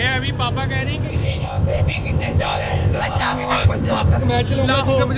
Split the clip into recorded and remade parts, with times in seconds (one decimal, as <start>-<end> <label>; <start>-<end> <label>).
0.0-1.1 recorded; 1.1-4.2 remade; 4.2-5.2 recorded